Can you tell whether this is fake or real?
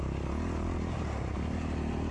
real